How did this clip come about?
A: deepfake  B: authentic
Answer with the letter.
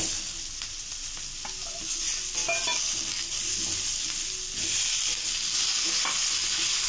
B